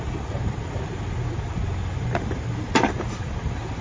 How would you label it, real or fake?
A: real